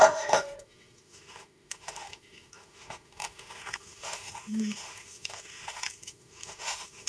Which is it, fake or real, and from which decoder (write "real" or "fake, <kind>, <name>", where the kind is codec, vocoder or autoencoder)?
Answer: fake, autoencoder, DAC-VAE